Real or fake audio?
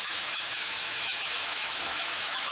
fake